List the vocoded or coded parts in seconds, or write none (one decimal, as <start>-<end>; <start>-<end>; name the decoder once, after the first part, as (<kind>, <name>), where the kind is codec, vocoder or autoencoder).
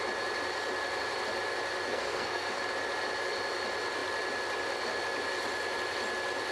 1.9-2.6 (codec, SNAC)